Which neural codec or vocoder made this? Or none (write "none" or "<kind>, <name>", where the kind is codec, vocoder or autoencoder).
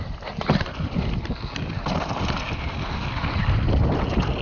none